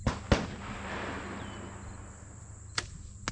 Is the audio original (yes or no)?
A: yes